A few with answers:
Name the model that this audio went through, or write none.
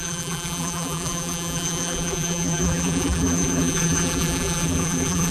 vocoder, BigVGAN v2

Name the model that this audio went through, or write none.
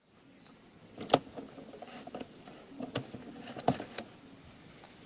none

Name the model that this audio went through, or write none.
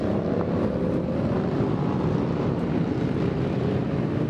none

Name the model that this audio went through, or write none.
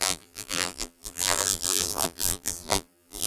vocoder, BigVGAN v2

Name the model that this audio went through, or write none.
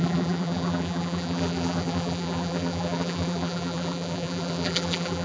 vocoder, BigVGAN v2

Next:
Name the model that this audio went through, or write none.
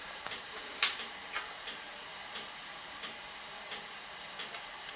vocoder, BigVGAN v2